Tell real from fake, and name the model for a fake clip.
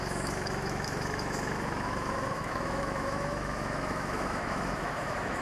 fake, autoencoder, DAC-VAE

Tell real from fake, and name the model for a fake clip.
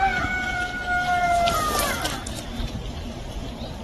real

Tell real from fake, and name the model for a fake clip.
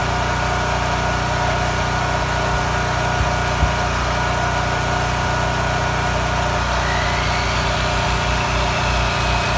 real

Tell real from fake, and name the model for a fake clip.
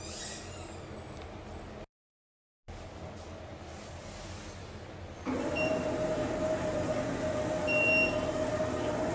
real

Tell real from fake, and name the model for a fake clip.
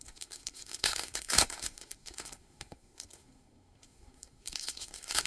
fake, codec, SNAC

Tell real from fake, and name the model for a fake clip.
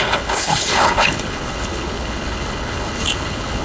fake, codec, HILCodec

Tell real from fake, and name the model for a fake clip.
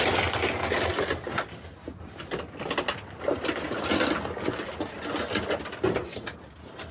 real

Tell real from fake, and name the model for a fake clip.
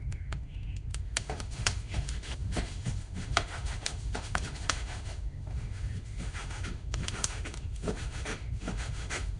fake, autoencoder, DAC-VAE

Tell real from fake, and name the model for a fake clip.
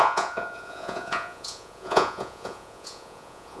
fake, vocoder, Vocos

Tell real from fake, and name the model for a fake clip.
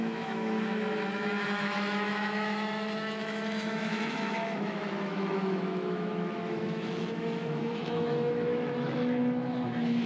fake, autoencoder, DAC-VAE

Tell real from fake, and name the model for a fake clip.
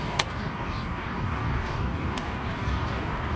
fake, codec, DAC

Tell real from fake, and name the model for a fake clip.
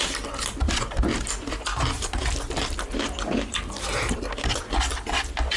real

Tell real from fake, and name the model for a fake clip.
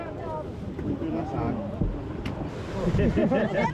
real